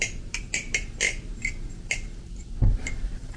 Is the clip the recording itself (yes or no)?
yes